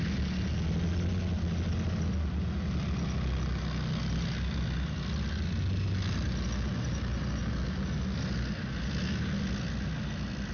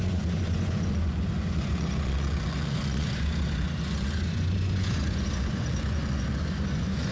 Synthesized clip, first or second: second